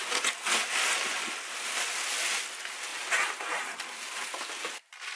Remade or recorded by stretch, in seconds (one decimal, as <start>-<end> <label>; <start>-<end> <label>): 0.0-5.2 recorded